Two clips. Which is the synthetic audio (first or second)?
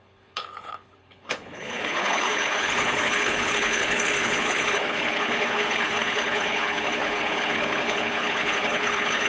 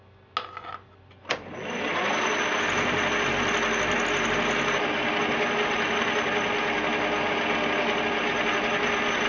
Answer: first